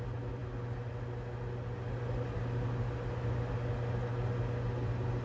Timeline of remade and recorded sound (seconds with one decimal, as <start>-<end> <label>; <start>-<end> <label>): 0.0-5.2 recorded